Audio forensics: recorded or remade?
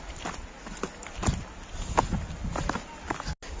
recorded